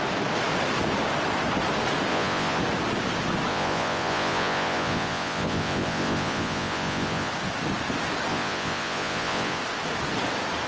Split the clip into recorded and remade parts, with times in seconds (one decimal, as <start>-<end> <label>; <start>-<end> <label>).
0.0-2.1 recorded; 2.1-2.6 remade; 2.6-3.5 recorded; 3.5-7.3 remade; 7.3-8.3 recorded; 8.3-9.6 remade; 9.6-10.7 recorded